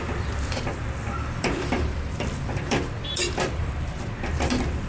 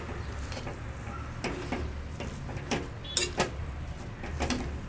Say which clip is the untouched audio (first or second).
second